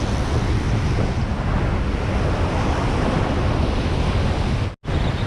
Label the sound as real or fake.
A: real